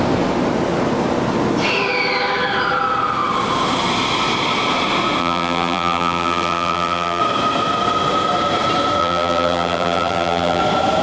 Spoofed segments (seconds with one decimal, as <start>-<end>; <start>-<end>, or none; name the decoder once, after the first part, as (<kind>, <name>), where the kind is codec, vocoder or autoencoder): 5.2-7.2 (vocoder, BigVGAN v2); 9.0-10.6